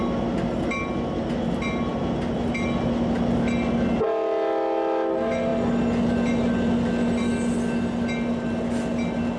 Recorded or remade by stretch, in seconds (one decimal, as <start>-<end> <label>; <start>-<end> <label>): 0.0-9.4 recorded